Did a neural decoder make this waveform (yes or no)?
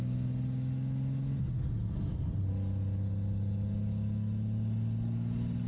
no